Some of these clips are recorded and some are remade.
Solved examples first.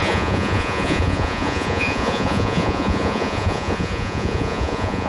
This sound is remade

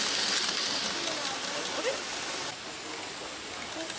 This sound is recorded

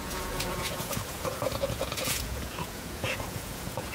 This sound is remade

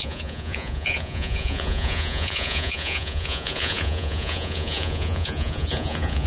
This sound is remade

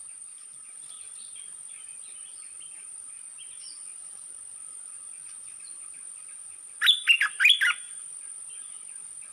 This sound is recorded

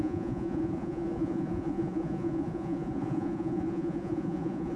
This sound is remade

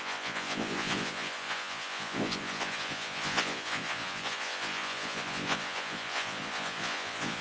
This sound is remade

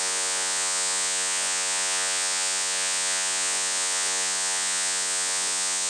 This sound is remade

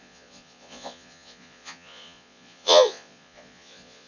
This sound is remade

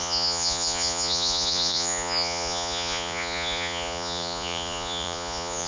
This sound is remade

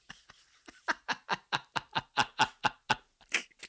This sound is recorded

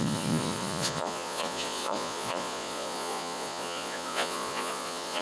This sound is remade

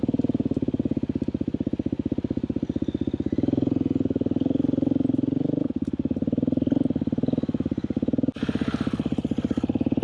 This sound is recorded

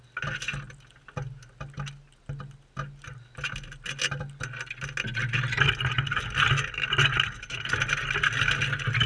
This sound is recorded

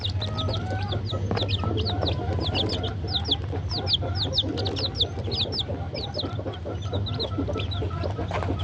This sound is recorded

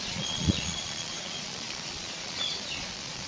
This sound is remade